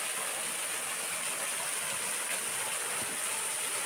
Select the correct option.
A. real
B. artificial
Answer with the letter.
A